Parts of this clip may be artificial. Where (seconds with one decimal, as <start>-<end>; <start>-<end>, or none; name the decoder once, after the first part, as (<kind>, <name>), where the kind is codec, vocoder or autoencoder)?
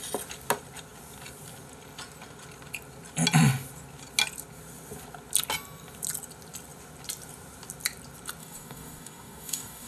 8.4-9.9 (codec, DAC)